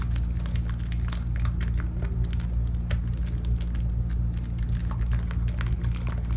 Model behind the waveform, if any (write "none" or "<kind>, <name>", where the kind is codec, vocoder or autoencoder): none